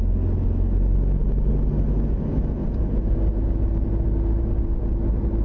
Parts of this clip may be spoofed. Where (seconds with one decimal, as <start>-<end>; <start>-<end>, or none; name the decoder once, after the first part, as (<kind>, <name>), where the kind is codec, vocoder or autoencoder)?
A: none